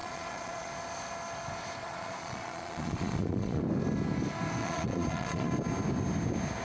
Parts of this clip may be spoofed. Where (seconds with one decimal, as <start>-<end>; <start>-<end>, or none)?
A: 0.0-0.7; 1.8-3.6; 4.6-5.5